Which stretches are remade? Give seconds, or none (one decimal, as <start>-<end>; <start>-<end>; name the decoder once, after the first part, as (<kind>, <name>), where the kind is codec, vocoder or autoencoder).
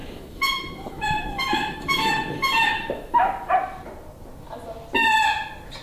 0.0-3.5 (autoencoder, DAC-VAE)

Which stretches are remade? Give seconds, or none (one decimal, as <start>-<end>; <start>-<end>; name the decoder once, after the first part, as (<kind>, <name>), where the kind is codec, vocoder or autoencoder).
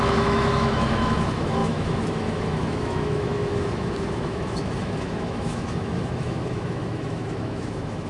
0.0-8.1 (autoencoder, DAC-VAE)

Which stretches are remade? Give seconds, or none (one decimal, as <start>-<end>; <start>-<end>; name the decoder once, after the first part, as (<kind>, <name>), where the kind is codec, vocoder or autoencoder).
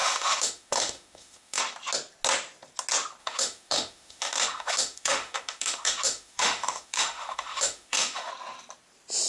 0.0-1.6 (autoencoder, DAC-VAE); 3.2-8.3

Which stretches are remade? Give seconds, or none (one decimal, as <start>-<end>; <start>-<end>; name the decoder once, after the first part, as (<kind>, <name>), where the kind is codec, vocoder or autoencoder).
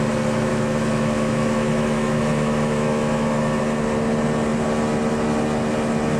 0.5-3.6 (autoencoder, DAC-VAE)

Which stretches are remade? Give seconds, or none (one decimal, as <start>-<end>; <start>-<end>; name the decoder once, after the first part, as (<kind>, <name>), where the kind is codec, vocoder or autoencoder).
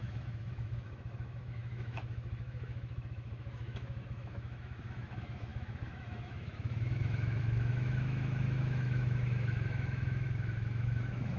0.0-11.4 (autoencoder, DAC-VAE)